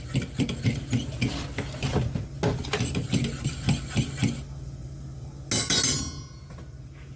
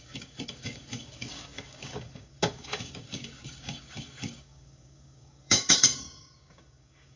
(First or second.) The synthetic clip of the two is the second